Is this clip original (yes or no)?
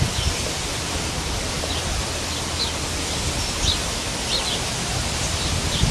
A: yes